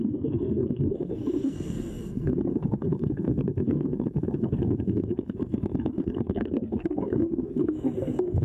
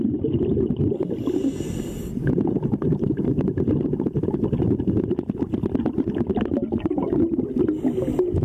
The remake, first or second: first